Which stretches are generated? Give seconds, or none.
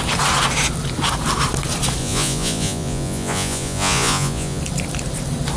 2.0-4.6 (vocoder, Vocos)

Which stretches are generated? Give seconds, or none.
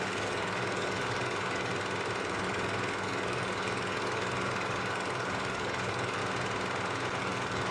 0.0-1.7 (codec, DAC); 2.2-6.2; 7.2-7.7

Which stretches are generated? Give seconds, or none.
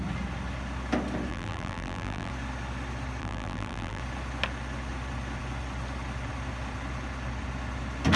1.3-2.3 (vocoder, BigVGAN v2); 3.2-4.0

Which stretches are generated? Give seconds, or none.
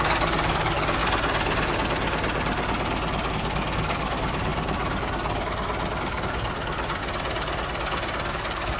0.0-1.0 (codec, DAC); 3.3-4.5; 6.0-7.0; 8.3-8.8